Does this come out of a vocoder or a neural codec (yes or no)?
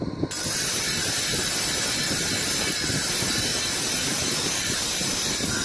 no